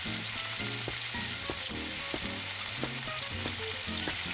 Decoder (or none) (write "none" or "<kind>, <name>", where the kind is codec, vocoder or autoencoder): none